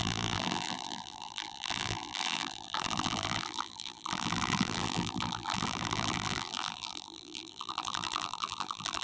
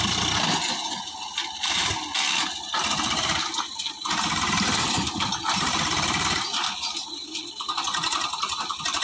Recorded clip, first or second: second